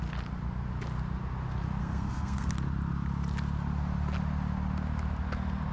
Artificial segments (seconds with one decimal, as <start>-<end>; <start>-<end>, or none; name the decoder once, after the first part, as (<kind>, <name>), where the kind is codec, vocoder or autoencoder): 1.8-2.5 (codec, SNAC)